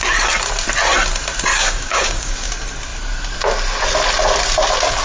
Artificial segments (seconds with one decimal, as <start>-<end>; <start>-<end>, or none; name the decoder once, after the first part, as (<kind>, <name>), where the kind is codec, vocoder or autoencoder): 1.5-2.5 (codec, DAC)